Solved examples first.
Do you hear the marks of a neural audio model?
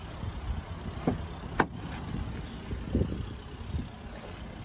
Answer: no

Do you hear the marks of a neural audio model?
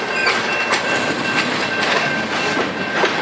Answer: no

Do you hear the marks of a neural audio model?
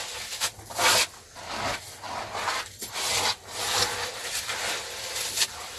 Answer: no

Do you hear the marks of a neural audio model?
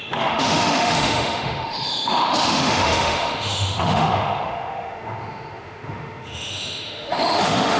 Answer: yes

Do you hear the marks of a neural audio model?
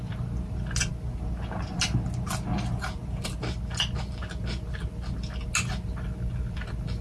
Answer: no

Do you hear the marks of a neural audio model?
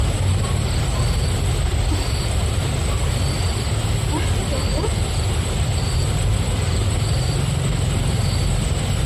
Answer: no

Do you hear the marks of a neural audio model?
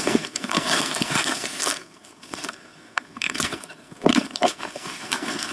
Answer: yes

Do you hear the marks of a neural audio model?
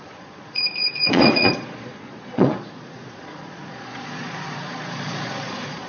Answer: yes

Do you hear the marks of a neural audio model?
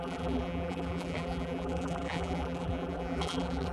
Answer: yes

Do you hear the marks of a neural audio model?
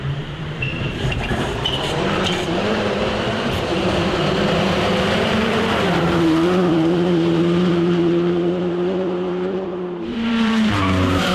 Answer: yes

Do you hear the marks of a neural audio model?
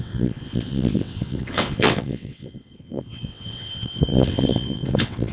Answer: yes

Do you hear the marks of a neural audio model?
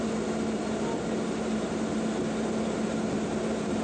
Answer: no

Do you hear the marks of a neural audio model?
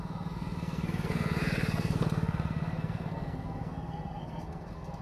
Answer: yes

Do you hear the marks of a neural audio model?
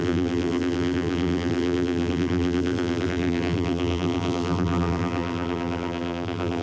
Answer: yes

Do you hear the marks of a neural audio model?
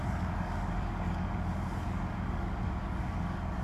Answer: yes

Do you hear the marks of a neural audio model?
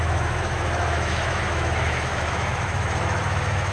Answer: yes